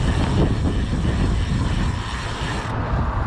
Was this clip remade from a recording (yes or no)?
no